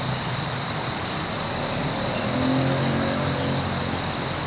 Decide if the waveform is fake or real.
real